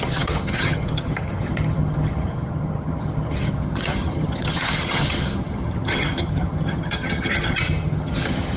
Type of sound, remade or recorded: remade